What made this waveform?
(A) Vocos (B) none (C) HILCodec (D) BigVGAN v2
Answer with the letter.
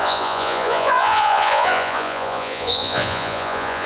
A